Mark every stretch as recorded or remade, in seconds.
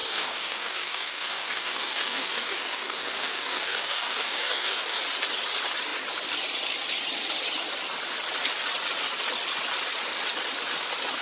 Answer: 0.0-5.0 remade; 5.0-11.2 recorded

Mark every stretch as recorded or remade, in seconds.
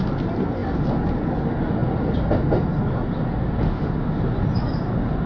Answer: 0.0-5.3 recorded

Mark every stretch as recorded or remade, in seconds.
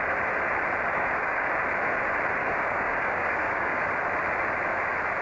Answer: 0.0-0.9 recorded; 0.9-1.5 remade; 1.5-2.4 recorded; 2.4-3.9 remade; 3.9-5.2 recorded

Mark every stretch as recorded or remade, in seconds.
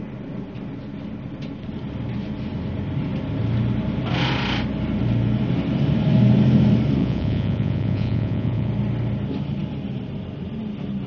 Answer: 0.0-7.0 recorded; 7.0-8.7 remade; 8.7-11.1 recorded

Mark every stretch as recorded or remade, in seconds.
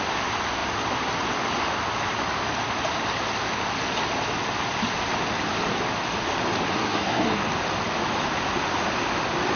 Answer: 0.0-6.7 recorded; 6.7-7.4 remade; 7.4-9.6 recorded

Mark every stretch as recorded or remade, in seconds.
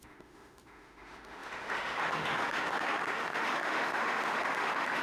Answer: 0.0-5.0 remade